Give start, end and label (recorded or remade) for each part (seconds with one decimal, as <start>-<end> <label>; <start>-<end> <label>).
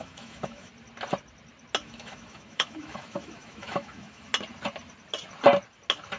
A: 0.0-0.7 remade; 0.7-1.8 recorded; 1.8-4.3 remade; 4.3-6.2 recorded